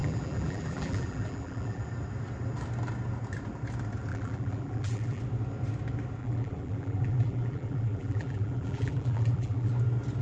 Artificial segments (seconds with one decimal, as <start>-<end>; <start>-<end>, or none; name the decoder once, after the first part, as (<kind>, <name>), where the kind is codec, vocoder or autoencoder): 0.0-1.9 (vocoder, BigVGAN v2); 4.1-5.2; 6.2-9.7